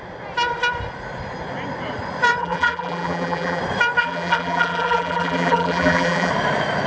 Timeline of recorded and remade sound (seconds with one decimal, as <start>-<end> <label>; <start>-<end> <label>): 0.0-2.4 recorded; 2.4-3.6 remade; 3.6-4.0 recorded; 4.0-6.3 remade; 6.3-6.9 recorded